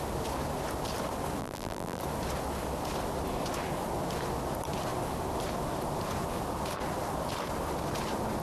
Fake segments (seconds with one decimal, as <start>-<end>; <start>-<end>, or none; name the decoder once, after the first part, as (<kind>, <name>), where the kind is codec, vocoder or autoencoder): 1.4-2.0 (vocoder, BigVGAN v2)